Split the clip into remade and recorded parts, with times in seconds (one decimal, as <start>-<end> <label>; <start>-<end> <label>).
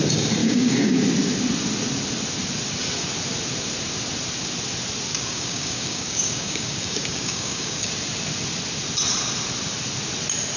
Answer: 0.0-0.4 recorded; 0.4-1.0 remade; 1.0-5.1 recorded; 5.1-7.9 remade; 7.9-10.6 recorded